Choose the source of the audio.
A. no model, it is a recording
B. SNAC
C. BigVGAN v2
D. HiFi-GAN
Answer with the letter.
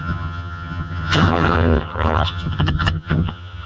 D